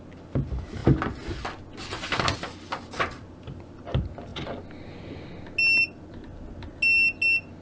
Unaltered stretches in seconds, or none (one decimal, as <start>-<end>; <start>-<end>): 0.0-7.6